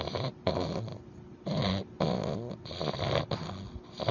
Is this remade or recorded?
recorded